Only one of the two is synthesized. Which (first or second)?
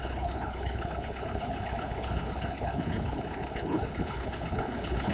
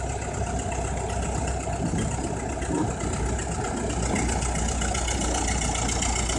first